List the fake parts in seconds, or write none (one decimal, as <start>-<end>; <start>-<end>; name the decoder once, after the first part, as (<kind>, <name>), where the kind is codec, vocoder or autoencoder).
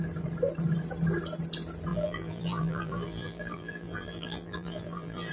1.9-5.3 (vocoder, BigVGAN v2)